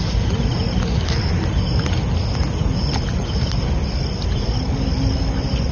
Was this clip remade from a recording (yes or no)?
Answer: no